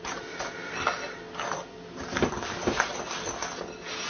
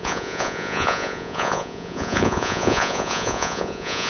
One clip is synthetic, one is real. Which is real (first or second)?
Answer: first